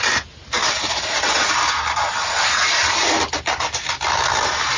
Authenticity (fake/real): real